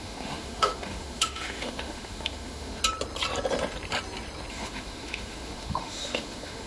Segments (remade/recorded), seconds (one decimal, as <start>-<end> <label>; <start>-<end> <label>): 0.0-2.8 remade; 2.8-4.5 recorded; 4.5-6.7 remade